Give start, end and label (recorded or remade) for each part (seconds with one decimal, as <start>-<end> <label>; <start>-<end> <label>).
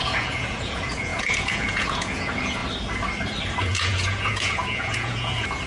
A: 0.0-2.6 remade; 2.6-3.6 recorded; 3.6-5.7 remade